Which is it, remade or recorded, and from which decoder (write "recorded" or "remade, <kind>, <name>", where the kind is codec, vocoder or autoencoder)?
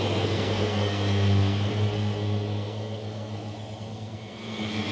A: remade, codec, SNAC